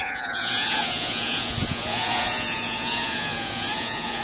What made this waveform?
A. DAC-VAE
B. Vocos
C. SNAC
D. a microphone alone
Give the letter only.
B